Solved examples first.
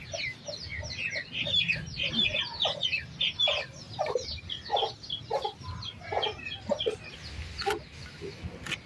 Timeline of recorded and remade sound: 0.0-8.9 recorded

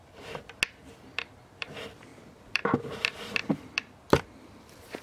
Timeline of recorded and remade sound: 0.0-0.7 recorded; 0.7-5.0 remade

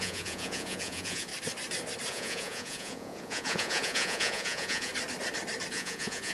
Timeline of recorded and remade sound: 0.0-1.3 remade; 1.3-2.1 recorded; 2.1-4.9 remade; 4.9-5.7 recorded; 5.7-6.3 remade

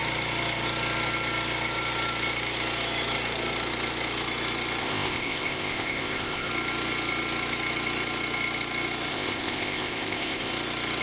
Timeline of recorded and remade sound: 0.0-4.8 recorded; 4.8-6.5 remade; 6.5-9.1 recorded; 9.1-10.5 remade; 10.5-11.0 recorded

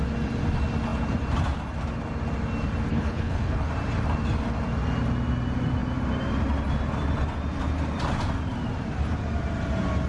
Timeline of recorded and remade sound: 0.0-2.9 recorded; 2.9-3.7 remade; 3.7-10.1 recorded

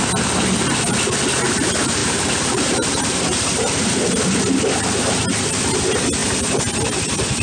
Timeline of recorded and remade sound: 0.0-2.0 recorded; 2.0-4.1 remade; 4.1-7.4 recorded

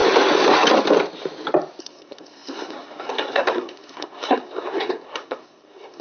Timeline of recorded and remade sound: 0.0-1.8 recorded; 1.8-6.0 remade